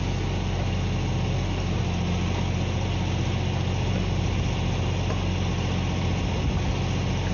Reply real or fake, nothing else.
real